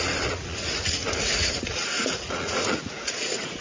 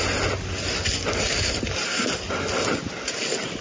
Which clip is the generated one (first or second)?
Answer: first